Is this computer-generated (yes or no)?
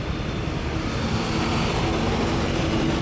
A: no